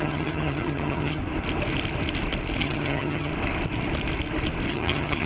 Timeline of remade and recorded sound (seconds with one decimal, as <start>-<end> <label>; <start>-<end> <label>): 0.0-1.2 remade; 1.2-2.6 recorded; 2.6-3.3 remade; 3.3-4.7 recorded; 4.7-5.3 remade